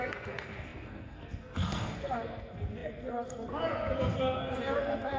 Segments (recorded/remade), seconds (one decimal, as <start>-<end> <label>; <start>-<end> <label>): 0.0-5.2 remade